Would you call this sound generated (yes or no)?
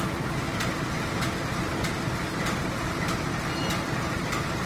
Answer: no